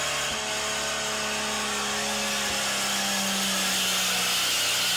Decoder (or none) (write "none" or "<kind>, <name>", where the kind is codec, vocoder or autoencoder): none